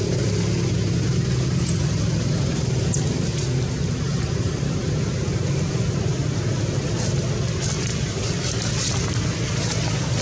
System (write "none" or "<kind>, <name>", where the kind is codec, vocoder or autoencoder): none